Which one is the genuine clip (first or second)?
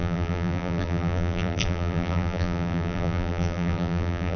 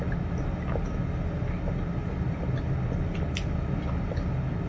second